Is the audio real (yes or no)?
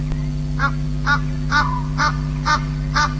yes